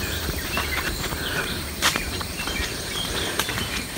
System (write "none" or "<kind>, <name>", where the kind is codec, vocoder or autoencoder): vocoder, BigVGAN v2